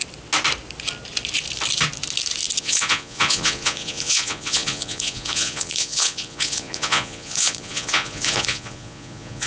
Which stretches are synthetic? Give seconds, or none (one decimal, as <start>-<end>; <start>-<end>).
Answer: 2.6-9.5